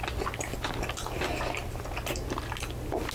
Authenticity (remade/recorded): recorded